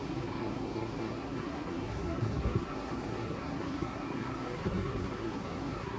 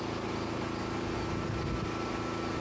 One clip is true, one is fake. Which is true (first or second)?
second